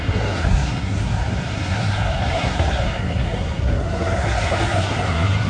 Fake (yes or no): yes